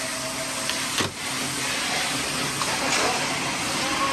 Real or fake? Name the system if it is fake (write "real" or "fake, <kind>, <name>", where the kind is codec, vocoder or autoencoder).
real